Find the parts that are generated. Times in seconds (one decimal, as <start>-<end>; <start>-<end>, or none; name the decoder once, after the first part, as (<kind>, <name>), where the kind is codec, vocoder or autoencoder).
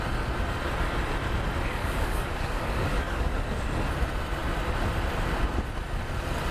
1.8-3.6 (codec, DAC)